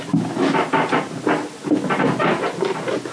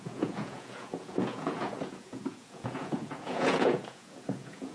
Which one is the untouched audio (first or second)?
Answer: first